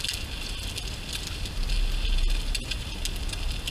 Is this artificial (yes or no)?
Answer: no